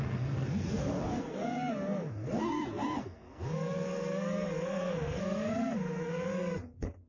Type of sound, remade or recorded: remade